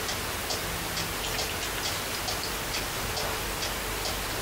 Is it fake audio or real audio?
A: real